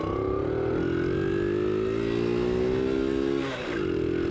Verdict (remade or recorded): recorded